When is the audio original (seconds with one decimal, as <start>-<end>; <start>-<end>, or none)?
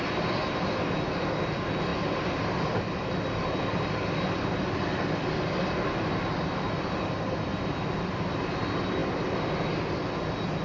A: 0.0-10.6